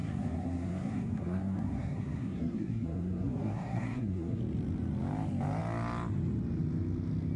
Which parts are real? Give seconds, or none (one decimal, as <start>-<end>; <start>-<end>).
4.4-7.4